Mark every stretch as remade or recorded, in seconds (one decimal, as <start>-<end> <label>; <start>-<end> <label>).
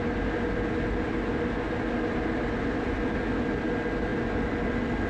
0.0-5.1 recorded